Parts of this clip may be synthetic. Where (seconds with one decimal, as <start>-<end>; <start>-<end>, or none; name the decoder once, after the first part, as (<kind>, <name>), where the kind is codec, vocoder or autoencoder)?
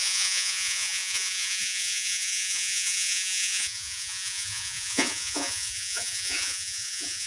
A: 0.0-7.3 (vocoder, Vocos)